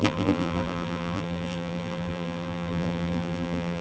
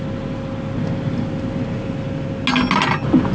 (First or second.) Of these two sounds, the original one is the second